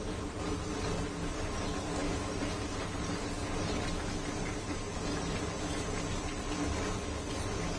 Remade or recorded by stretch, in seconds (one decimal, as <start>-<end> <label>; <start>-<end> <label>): 0.0-7.8 recorded